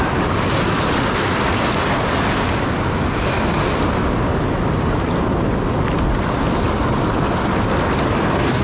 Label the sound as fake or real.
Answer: real